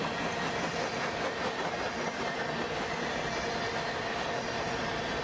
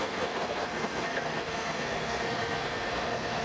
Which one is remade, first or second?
second